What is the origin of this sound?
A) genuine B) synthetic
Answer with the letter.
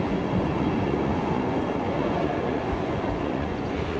B